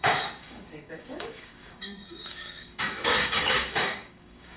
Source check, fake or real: fake